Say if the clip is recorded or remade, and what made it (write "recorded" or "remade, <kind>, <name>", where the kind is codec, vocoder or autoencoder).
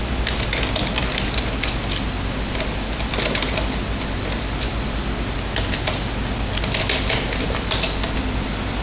recorded